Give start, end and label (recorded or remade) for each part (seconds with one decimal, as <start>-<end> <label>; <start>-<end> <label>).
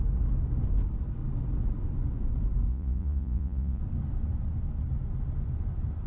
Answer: 0.0-2.7 recorded; 2.7-3.8 remade; 3.8-6.1 recorded